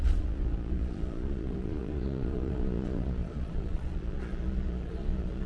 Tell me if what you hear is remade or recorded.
remade